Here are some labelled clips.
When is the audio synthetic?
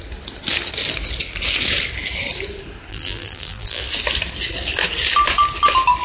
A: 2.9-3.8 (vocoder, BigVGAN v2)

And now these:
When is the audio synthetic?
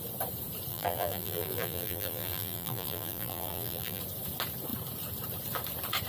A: 0.7-4.0 (vocoder, BigVGAN v2)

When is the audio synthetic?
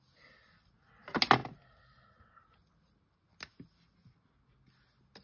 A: none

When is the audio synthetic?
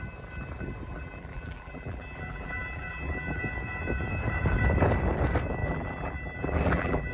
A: 0.9-3.4 (vocoder, BigVGAN v2); 5.6-7.1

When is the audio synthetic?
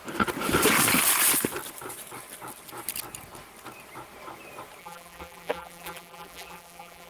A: 4.8-7.1 (vocoder, BigVGAN v2)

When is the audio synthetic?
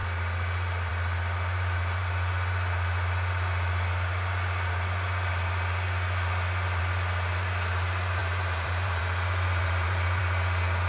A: 8.2-9.0 (vocoder, BigVGAN v2); 9.6-10.2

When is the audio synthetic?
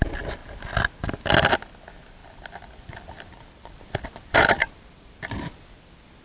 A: 2.2-6.2 (vocoder, BigVGAN v2)